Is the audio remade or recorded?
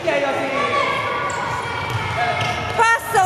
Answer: recorded